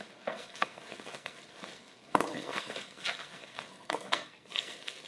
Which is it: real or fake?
fake